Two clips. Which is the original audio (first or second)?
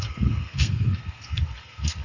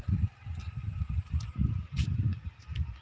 second